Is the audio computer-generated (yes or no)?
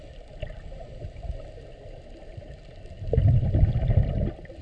no